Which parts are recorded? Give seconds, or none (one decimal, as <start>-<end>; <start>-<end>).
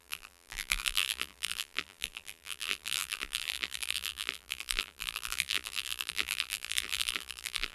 none